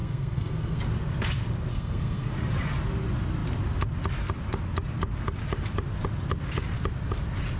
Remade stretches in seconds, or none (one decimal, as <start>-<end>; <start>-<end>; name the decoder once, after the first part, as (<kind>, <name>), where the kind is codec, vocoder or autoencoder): 0.0-0.8 (codec, SNAC); 1.7-2.3